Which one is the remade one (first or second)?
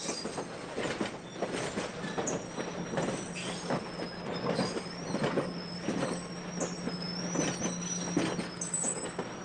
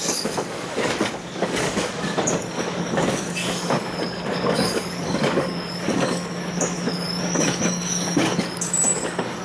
second